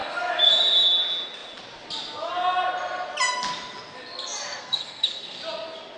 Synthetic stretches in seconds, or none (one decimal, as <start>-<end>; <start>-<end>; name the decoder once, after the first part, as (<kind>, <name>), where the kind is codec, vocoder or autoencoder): 0.0-0.5 (codec, SNAC); 4.6-5.4

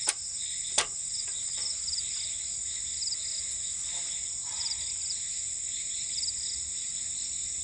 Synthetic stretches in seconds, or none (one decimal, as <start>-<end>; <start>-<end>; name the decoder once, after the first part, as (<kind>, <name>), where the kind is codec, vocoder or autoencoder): none

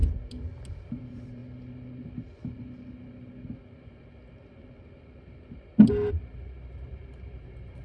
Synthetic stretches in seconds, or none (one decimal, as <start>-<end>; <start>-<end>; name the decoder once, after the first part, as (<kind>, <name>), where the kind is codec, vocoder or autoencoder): 0.7-1.4 (vocoder, BigVGAN v2); 6.1-7.8

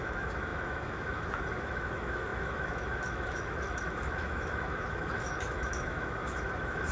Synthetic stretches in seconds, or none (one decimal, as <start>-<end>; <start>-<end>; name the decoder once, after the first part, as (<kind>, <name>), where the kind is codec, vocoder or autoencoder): 0.0-6.9 (autoencoder, DAC-VAE)